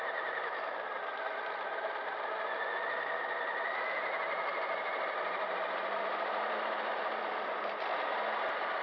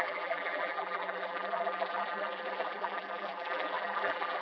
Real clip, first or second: first